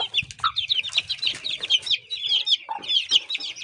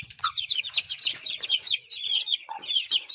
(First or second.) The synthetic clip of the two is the second